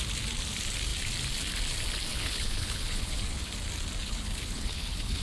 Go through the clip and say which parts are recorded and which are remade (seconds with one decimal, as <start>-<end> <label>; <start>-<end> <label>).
0.0-2.1 recorded; 2.1-3.5 remade; 3.5-4.0 recorded; 4.0-5.2 remade